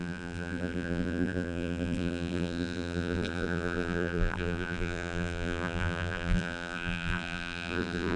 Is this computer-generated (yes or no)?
yes